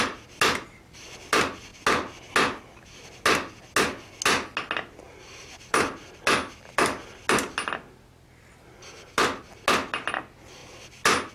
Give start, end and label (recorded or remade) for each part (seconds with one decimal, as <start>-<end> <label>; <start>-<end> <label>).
0.0-11.3 recorded